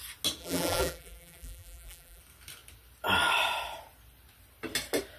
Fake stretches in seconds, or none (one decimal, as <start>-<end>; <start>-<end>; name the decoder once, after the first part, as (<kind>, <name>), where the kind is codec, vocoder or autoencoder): 0.4-2.2 (vocoder, BigVGAN v2)